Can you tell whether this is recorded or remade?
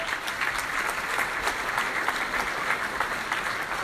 recorded